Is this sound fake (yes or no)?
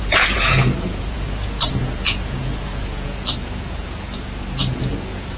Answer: yes